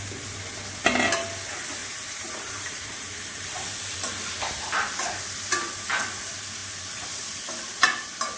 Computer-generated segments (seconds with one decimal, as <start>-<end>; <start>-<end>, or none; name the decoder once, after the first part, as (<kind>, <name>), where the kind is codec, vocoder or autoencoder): 1.8-4.6 (vocoder, BigVGAN v2)